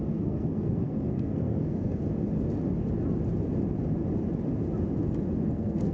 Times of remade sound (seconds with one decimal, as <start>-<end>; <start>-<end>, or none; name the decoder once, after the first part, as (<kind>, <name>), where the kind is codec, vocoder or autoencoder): 0.0-2.0 (codec, SNAC); 5.5-5.9